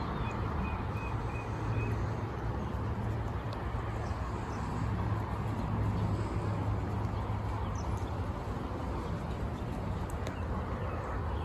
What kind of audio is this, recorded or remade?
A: recorded